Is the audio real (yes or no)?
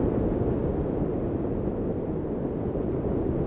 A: yes